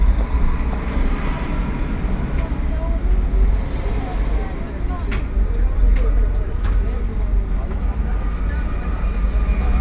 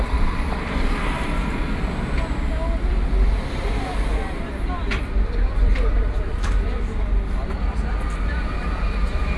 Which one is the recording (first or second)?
first